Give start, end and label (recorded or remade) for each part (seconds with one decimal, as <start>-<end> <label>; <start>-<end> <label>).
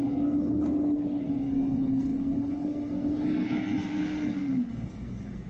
0.0-5.5 remade